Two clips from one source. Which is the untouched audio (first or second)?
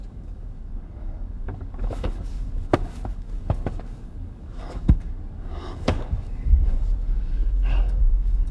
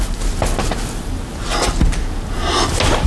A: second